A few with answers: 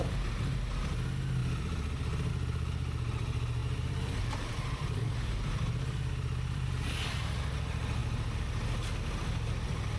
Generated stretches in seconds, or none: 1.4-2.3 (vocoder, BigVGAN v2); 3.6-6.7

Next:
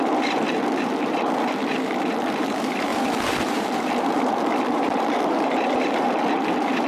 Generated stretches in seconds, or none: 0.0-6.9 (vocoder, BigVGAN v2)

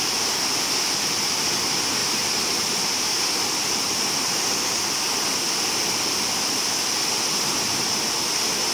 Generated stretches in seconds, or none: 2.0-4.0 (vocoder, BigVGAN v2); 5.3-6.8